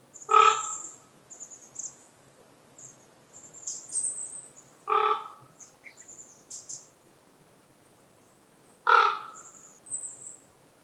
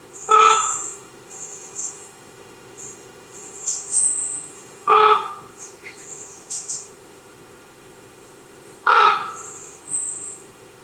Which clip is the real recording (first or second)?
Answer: first